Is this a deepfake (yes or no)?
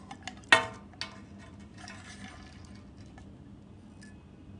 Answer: no